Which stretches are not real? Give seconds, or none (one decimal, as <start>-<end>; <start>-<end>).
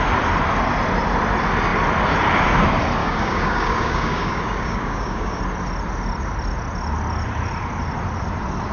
3.0-5.4